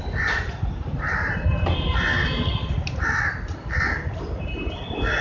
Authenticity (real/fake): fake